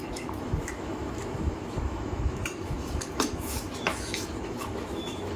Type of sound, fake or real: fake